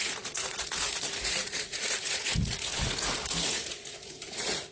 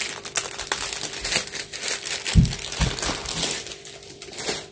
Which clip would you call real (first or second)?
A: second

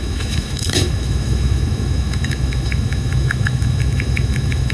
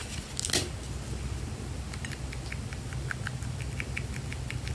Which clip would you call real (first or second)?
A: second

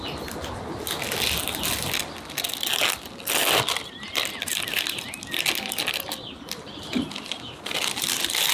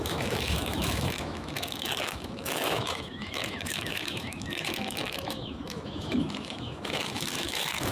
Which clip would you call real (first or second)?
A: first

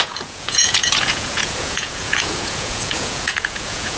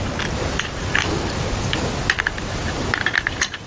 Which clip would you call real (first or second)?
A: second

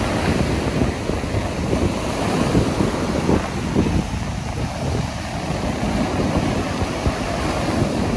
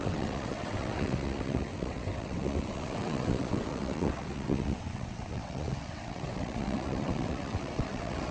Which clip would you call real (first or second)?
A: first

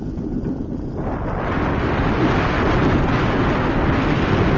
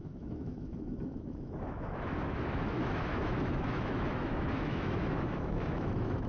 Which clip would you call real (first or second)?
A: first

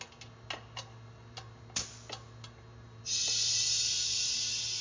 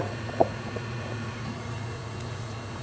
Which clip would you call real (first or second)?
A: first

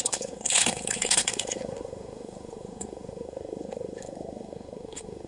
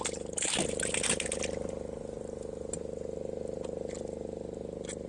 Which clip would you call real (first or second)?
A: second